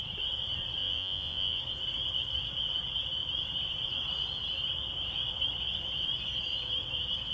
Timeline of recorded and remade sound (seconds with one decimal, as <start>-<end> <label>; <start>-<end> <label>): 0.0-0.8 recorded; 0.8-1.6 remade; 1.6-7.3 recorded